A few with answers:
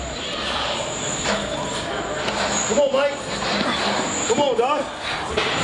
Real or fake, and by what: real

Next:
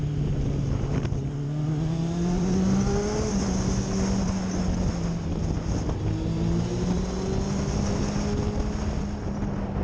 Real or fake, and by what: real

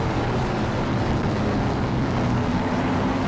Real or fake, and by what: fake, codec, DAC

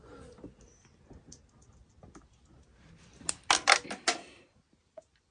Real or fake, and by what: real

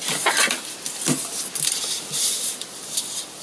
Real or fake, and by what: real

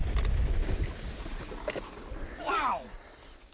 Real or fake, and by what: real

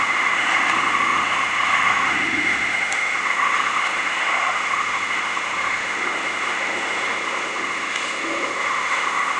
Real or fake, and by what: fake, autoencoder, DAC-VAE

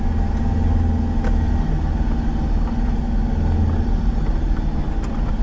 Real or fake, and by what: real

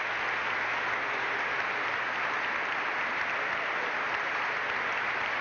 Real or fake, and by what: real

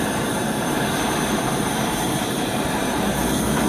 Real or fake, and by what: fake, vocoder, BigVGAN v2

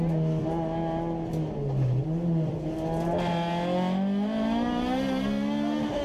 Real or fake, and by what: real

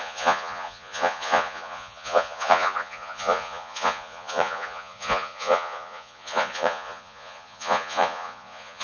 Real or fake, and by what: fake, vocoder, Vocos